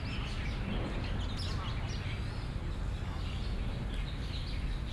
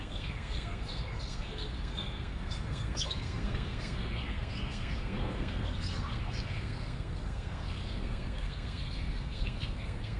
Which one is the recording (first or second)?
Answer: first